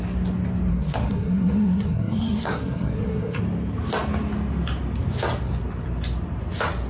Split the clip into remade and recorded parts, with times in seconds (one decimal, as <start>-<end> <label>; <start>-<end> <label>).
0.0-0.7 recorded; 0.7-3.4 remade; 3.4-6.9 recorded